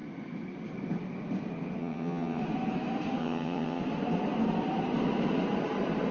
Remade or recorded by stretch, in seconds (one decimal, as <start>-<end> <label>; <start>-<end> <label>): 0.0-1.8 recorded; 1.8-2.4 remade; 2.4-3.2 recorded; 3.2-3.8 remade; 3.8-6.1 recorded